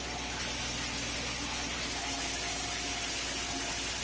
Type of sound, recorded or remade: recorded